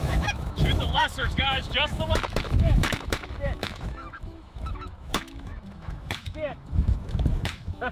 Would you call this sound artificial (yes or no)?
yes